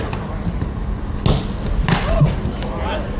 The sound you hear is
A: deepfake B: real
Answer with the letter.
B